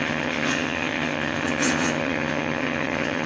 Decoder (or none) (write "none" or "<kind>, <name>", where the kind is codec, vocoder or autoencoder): vocoder, HiFi-GAN